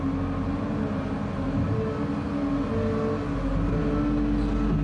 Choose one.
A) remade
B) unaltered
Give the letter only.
B